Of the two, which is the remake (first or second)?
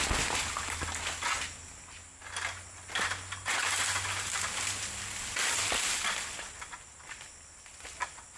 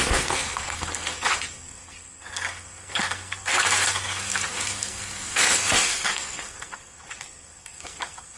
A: second